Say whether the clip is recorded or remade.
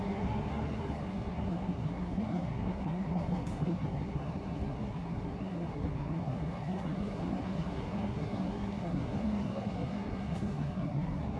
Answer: remade